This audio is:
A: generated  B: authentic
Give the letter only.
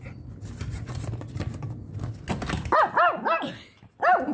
B